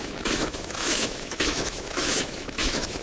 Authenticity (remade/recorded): remade